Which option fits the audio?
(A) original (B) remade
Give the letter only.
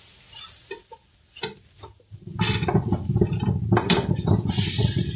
A